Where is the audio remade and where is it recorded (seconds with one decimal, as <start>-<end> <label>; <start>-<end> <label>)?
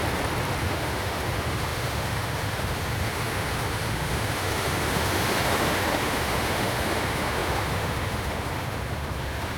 0.0-0.6 recorded; 0.6-9.6 remade